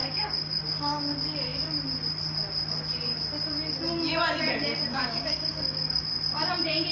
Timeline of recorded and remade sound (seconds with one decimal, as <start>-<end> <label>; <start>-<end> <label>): 0.0-0.6 remade; 0.6-4.9 recorded; 4.9-6.0 remade; 6.0-6.9 recorded